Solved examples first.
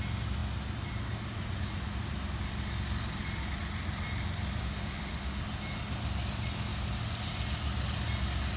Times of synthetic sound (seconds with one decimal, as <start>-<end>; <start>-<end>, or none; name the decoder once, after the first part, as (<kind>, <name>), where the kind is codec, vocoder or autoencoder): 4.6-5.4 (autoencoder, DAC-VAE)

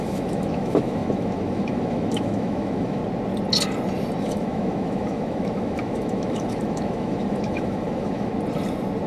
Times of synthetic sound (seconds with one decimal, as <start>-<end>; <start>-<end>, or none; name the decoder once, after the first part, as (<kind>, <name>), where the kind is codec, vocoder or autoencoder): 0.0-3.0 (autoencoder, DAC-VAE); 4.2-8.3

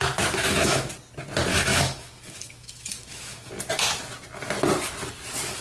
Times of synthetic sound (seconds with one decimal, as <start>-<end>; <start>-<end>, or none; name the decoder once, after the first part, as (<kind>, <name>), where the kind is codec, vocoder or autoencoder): 0.4-0.9 (autoencoder, DAC-VAE); 1.5-3.5

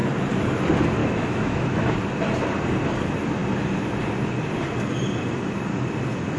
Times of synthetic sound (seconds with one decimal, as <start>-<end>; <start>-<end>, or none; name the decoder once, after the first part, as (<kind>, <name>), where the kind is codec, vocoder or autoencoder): 1.0-1.9 (autoencoder, DAC-VAE)